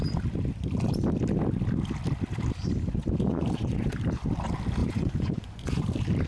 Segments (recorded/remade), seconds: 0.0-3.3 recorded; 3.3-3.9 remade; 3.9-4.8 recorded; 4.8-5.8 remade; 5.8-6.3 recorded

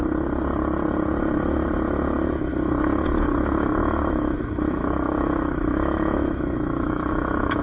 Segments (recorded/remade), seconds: 0.0-3.8 recorded; 3.8-7.6 remade